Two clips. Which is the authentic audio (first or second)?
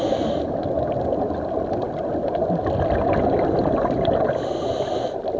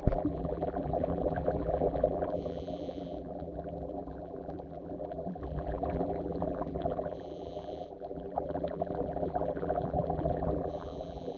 first